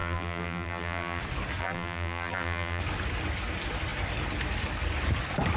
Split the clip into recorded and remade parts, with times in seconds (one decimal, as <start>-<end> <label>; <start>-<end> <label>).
0.0-1.2 remade; 1.2-1.6 recorded; 1.6-2.8 remade; 2.8-5.6 recorded